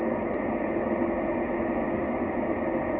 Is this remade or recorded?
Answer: recorded